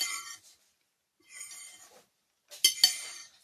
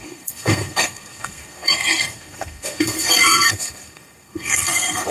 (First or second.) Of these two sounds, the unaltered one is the first